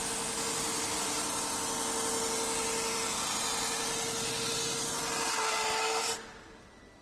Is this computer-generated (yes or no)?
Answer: no